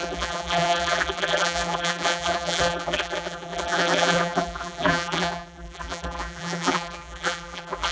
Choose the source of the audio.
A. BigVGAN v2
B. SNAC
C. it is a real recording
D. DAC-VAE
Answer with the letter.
A